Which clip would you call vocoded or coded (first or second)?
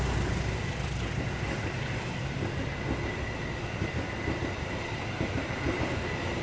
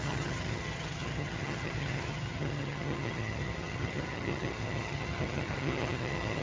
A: second